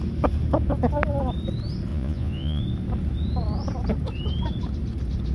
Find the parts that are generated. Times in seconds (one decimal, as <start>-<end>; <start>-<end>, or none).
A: 1.9-2.6